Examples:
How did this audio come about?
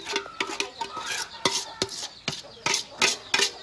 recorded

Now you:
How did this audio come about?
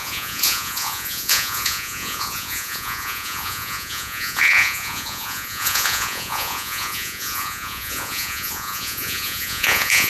remade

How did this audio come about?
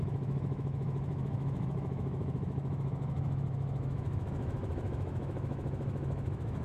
remade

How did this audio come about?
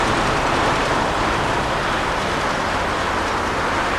recorded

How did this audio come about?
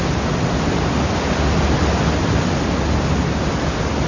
recorded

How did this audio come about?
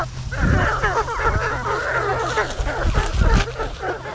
recorded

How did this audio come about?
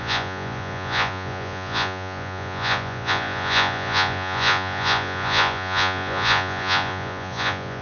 remade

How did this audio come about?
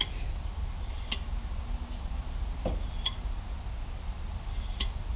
recorded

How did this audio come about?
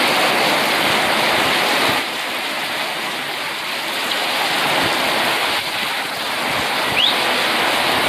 recorded